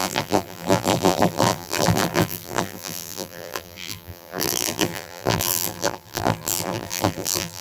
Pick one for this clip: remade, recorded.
remade